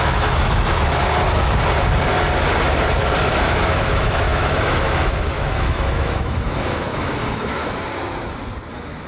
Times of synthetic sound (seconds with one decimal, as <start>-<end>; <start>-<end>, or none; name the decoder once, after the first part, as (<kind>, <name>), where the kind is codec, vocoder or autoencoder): 0.0-1.0 (autoencoder, DAC-VAE); 3.2-7.6; 8.7-9.1